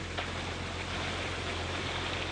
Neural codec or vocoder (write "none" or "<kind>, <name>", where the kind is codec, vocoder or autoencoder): none